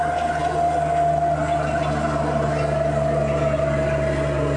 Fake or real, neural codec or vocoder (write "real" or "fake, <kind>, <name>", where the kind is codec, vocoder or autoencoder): real